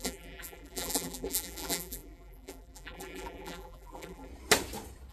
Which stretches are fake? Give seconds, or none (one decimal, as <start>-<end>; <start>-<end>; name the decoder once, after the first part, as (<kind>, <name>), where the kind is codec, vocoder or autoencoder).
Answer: 0.0-4.3 (vocoder, BigVGAN v2)